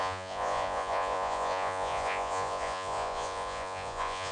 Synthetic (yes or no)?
yes